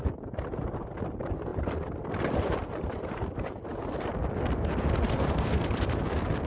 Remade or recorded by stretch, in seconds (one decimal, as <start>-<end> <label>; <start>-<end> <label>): 0.0-3.7 remade; 3.7-4.5 recorded; 4.5-6.5 remade